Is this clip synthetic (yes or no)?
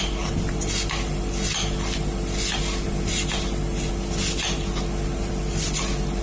no